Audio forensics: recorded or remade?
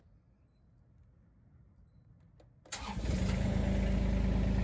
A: recorded